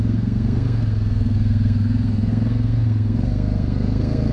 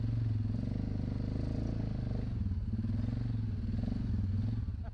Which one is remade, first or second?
first